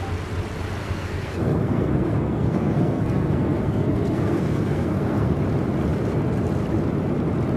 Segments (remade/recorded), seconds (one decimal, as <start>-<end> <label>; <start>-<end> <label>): 0.0-0.8 recorded; 0.8-5.4 remade; 5.4-7.6 recorded